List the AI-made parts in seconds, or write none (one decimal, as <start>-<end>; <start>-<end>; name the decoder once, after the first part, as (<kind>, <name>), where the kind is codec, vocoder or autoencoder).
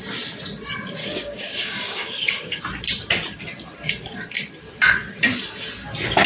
1.0-2.6 (codec, DAC)